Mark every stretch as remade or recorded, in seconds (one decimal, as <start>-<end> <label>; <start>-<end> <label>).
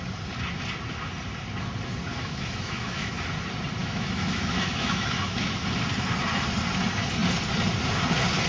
0.0-2.1 recorded; 2.1-3.1 remade; 3.1-3.8 recorded; 3.8-5.5 remade; 5.5-8.5 recorded